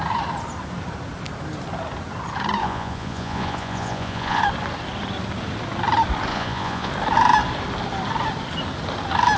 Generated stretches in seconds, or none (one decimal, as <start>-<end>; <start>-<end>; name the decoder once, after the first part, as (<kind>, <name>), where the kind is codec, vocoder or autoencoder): 2.6-4.4 (vocoder, Vocos); 6.3-6.9